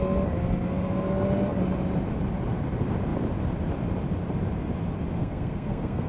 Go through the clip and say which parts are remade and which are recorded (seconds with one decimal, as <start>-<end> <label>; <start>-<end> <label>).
0.0-5.2 recorded; 5.2-6.1 remade